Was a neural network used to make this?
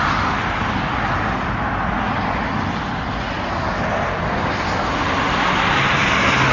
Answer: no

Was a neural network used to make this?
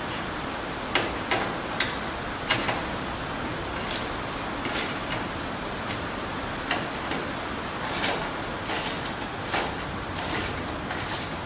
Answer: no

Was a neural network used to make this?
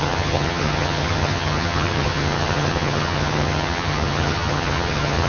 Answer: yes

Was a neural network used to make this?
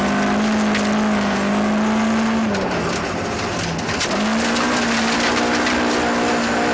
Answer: no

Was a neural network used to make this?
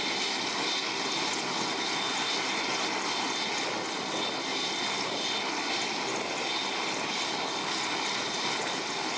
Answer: no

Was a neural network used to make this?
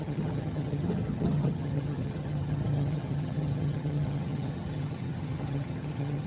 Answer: yes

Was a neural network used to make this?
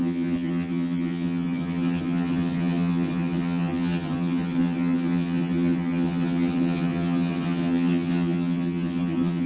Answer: yes